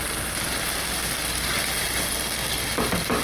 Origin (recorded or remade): recorded